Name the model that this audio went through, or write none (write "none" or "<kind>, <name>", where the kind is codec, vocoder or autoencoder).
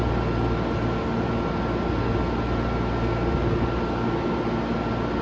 none